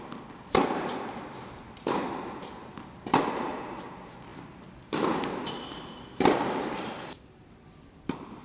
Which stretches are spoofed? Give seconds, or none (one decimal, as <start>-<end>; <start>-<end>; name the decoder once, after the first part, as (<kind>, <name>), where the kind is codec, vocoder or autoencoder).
none